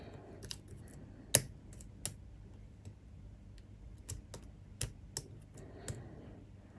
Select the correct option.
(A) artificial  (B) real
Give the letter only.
B